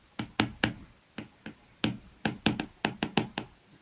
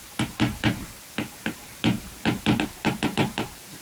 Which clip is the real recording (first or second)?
first